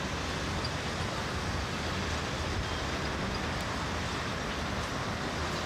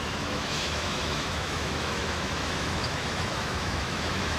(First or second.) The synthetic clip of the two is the second